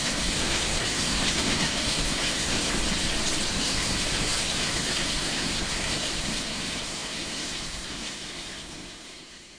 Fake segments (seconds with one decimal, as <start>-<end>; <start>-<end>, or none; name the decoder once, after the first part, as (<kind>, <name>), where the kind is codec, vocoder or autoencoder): 0.0-2.8 (codec, SNAC); 3.5-9.6